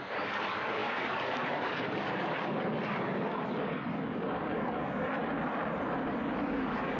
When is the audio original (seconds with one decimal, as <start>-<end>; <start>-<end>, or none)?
5.2-6.1